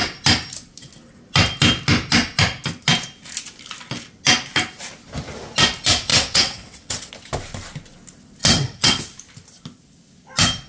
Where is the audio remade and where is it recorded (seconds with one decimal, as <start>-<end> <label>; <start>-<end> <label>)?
0.0-6.1 recorded; 6.1-7.1 remade; 7.1-8.4 recorded; 8.4-9.0 remade; 9.0-10.7 recorded